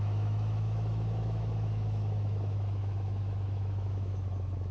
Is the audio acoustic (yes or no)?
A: no